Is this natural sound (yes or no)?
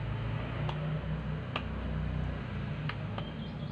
yes